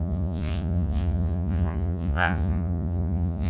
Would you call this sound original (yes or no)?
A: no